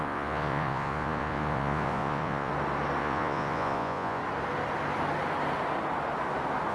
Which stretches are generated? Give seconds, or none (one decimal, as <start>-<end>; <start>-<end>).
0.0-2.5; 3.0-4.2